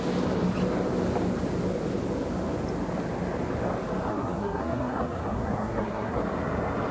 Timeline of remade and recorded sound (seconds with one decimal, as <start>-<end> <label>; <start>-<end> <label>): 0.0-4.1 recorded; 4.1-6.2 remade; 6.2-6.9 recorded